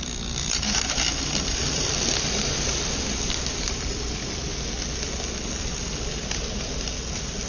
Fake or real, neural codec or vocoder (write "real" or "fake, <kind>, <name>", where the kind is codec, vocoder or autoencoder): fake, vocoder, BigVGAN v2